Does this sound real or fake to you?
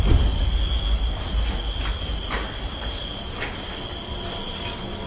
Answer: real